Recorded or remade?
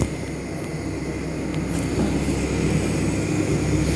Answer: recorded